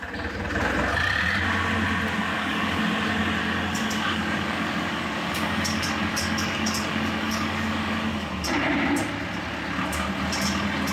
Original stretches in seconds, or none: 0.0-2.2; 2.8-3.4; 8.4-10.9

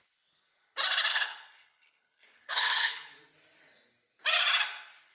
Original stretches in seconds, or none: 0.0-1.1; 3.2-5.1

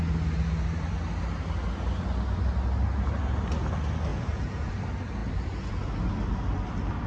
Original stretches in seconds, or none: 0.0-4.1; 4.7-7.1

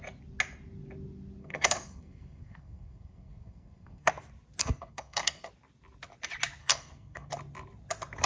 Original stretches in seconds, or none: 0.0-1.4; 4.1-4.6; 5.5-6.6; 7.3-8.3

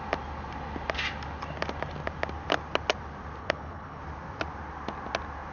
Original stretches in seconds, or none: 0.0-3.4; 4.0-5.5

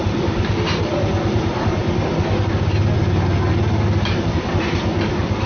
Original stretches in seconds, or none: 1.8-5.1

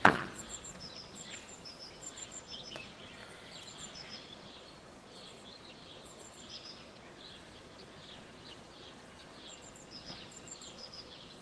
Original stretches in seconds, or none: 1.4-1.9; 3.2-3.7

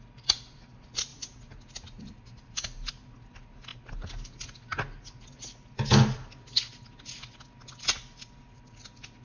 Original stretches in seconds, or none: 0.0-9.2